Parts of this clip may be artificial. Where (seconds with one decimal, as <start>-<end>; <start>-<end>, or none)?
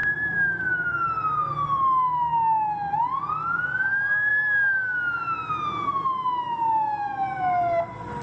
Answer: none